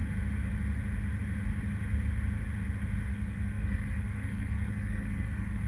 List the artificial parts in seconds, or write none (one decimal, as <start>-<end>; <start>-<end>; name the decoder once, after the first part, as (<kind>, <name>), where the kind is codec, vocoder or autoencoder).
3.1-5.7 (codec, SNAC)